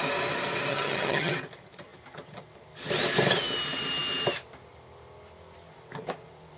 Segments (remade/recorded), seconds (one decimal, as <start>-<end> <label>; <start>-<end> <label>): 0.0-0.7 recorded; 0.7-1.3 remade; 1.3-6.6 recorded